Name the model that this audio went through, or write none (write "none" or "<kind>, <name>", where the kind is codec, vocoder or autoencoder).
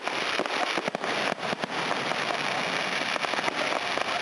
none